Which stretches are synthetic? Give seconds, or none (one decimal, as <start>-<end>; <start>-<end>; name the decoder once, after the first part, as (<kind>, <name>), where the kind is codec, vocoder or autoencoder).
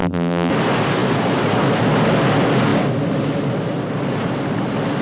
0.0-0.5 (vocoder, BigVGAN v2)